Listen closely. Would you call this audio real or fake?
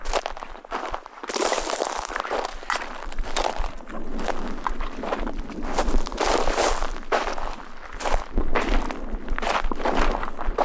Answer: fake